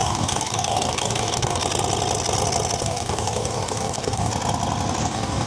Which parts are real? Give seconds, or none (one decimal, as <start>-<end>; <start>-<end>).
1.6-2.8; 4.3-5.0